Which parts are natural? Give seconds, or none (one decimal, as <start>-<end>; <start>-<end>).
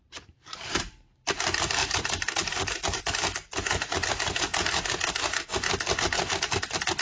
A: 0.0-1.8; 3.1-7.0